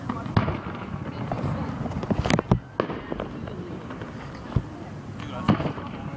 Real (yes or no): yes